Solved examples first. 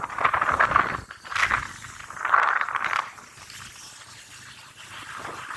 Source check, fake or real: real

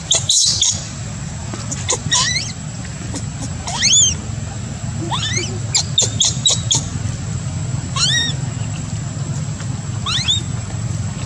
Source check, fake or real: real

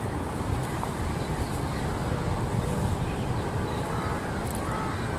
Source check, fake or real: real